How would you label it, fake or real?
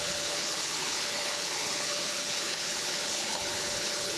fake